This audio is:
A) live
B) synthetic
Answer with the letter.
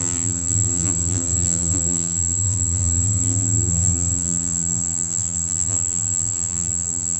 B